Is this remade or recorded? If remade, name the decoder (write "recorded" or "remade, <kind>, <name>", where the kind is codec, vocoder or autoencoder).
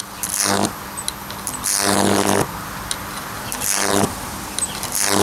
recorded